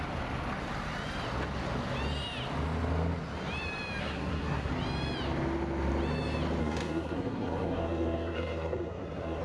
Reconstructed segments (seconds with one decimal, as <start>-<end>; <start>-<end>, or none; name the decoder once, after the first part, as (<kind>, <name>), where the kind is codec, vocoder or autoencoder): 4.0-4.7 (codec, SNAC); 6.6-9.4